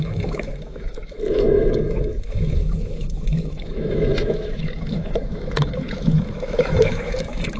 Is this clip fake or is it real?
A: fake